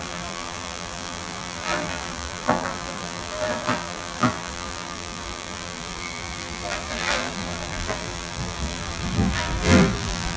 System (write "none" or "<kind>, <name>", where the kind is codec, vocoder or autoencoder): vocoder, BigVGAN v2